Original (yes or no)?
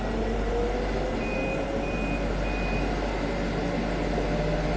yes